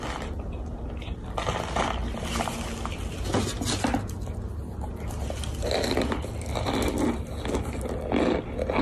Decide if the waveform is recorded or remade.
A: recorded